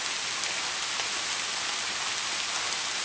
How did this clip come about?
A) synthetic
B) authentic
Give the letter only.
B